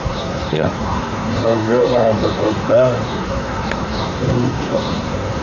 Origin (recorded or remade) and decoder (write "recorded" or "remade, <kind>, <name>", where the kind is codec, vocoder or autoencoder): remade, codec, SNAC